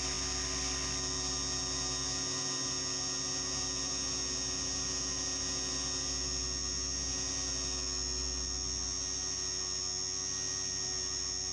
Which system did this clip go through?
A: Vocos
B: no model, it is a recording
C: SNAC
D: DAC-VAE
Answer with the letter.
B